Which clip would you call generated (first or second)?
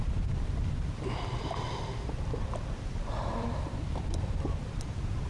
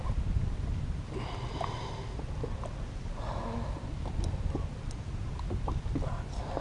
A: first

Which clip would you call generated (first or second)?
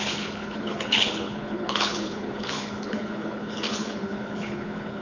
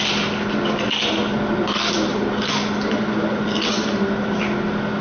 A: first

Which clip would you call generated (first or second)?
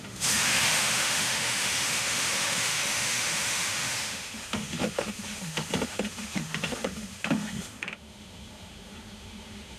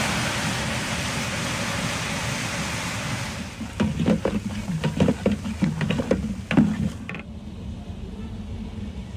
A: first